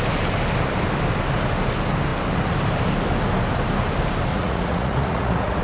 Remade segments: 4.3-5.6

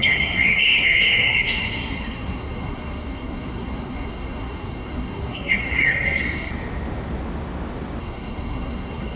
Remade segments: 0.0-6.5; 8.0-9.2

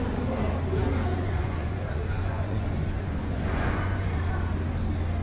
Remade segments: 1.1-4.2

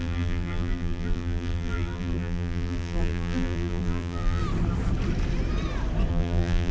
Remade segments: 0.0-4.4; 6.1-6.7

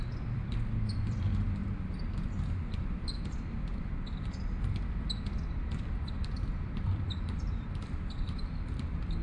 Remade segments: 0.0-1.6; 5.4-9.2